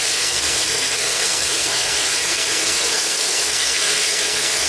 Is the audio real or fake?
fake